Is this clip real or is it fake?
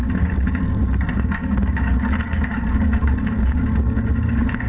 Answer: fake